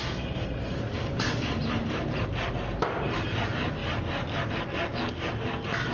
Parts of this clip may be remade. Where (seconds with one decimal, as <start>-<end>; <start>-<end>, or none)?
none